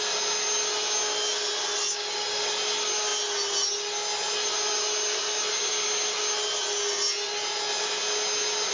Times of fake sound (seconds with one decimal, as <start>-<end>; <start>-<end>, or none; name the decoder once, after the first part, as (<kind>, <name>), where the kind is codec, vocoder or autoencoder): 1.9-2.5 (codec, DAC)

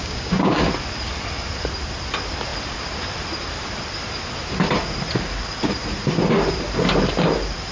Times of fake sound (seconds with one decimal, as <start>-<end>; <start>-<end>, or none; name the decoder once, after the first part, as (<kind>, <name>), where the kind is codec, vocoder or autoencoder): 0.0-0.7 (codec, DAC)